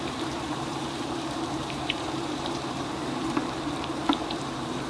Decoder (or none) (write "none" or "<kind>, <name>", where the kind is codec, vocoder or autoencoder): vocoder, BigVGAN v2